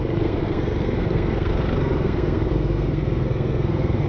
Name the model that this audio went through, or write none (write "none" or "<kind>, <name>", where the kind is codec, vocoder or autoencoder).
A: codec, SNAC